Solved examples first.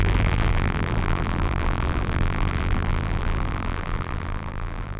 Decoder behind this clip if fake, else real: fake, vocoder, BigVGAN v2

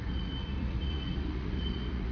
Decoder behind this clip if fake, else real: fake, vocoder, Vocos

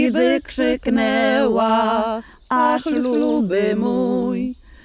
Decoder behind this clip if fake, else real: real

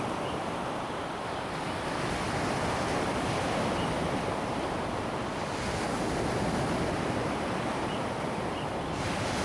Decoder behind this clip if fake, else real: real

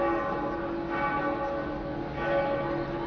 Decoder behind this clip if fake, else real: real